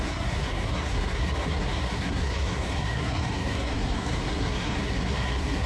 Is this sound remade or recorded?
remade